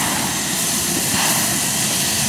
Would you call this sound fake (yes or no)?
no